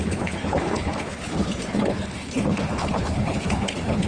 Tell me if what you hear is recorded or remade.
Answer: remade